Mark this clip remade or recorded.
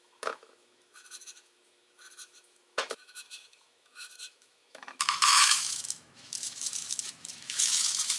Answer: remade